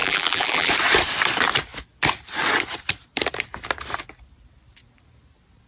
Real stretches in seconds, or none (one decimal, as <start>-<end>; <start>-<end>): 0.7-5.7